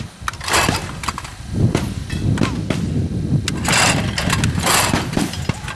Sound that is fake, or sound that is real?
real